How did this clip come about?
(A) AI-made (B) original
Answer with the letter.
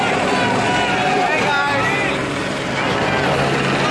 B